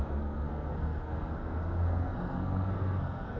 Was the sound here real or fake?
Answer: fake